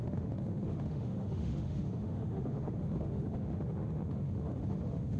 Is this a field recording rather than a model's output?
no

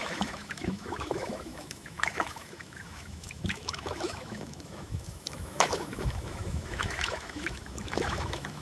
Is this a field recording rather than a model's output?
no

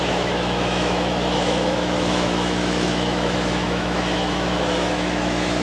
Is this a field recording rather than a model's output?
no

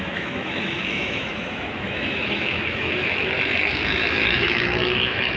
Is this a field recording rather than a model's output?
no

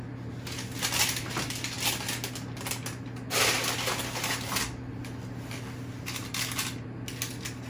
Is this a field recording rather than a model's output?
yes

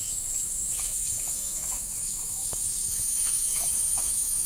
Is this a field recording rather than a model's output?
no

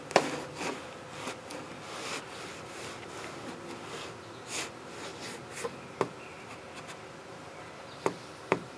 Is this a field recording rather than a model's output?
yes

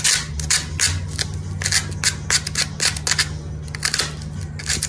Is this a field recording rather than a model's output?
yes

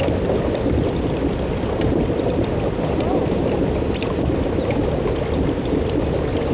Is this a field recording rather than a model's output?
yes